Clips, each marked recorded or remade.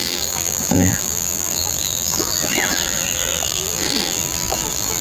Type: remade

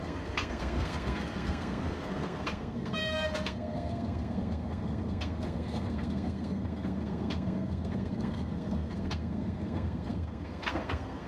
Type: remade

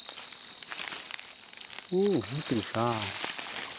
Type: recorded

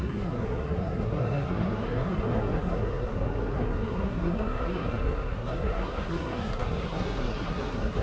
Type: remade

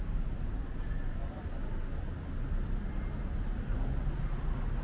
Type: recorded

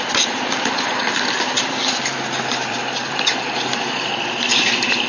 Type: remade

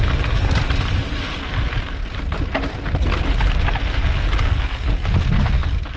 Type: recorded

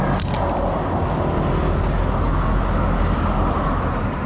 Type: recorded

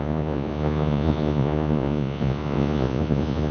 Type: remade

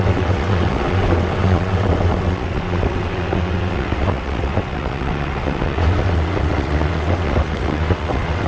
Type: remade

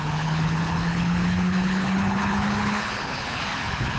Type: remade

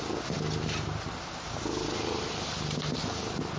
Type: recorded